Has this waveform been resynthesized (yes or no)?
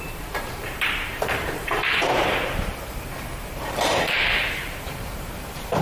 yes